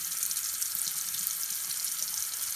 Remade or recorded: recorded